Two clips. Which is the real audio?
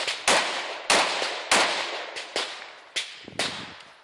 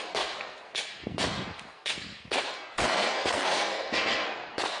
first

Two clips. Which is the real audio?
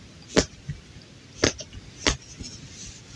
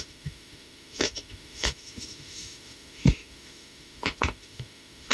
first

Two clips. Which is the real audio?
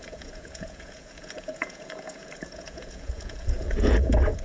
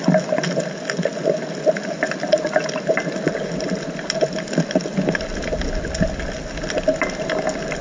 second